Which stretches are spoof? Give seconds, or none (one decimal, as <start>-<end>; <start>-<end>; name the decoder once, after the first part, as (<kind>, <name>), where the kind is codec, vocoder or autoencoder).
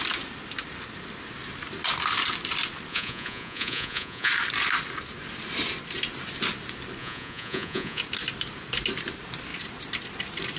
2.9-4.3 (vocoder, Vocos); 7.0-8.0